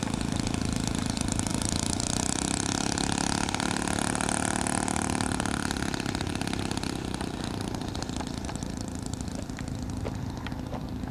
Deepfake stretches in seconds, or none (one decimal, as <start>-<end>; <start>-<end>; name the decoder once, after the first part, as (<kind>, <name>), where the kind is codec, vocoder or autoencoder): none